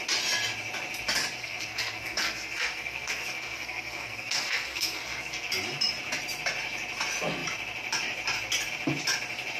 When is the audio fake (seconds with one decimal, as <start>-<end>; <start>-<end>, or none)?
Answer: 1.4-5.5

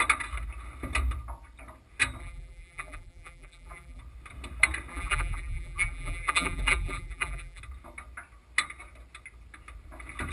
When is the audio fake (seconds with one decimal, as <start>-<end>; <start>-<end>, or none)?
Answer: 2.2-4.0; 4.9-7.6

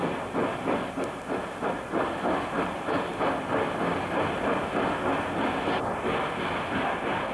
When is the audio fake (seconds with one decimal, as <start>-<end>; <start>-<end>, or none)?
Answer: none

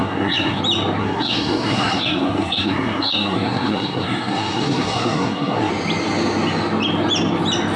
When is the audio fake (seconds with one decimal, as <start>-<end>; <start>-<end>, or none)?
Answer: 0.0-0.6; 1.0-5.7

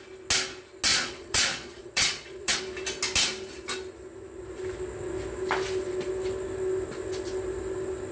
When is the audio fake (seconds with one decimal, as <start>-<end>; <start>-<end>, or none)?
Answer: 0.9-2.6